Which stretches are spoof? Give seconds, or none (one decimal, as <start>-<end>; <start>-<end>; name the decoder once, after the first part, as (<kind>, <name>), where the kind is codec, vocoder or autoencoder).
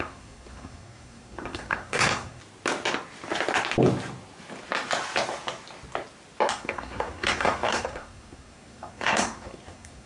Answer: 0.0-2.4 (codec, SNAC); 6.5-10.1